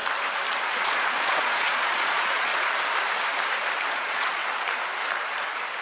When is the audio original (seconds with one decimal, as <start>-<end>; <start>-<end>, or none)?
0.0-0.7; 2.5-3.9; 4.4-5.8